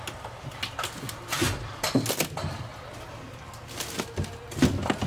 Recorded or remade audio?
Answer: recorded